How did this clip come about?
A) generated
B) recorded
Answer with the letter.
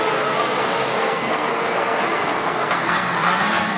A